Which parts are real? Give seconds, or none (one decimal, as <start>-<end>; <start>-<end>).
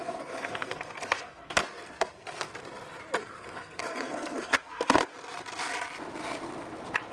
2.5-3.2; 5.0-7.1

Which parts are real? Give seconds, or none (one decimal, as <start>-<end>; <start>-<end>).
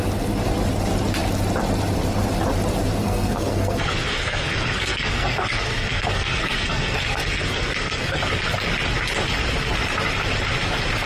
0.0-3.0; 8.2-11.1